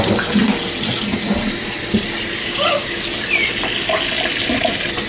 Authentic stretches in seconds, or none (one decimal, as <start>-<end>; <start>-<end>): 0.0-2.4; 3.0-5.1